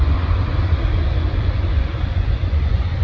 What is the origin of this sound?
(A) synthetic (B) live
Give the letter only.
A